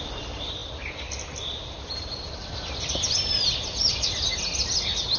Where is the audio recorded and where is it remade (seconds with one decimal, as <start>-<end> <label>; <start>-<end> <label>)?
0.0-5.2 recorded